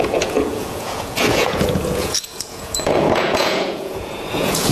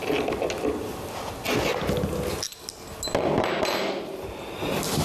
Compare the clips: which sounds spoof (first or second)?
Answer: first